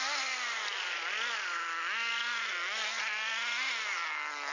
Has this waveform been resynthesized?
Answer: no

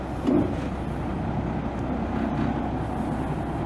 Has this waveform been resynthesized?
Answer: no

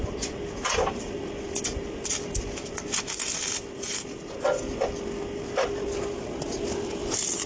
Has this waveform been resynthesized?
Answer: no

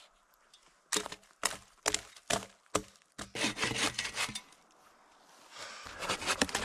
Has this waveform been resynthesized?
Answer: no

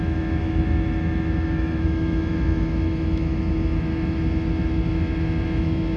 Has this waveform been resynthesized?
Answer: yes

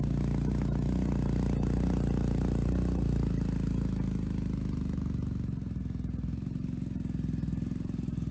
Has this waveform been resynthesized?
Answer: no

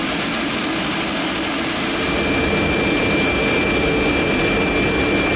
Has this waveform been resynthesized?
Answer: no